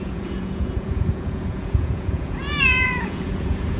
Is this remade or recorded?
remade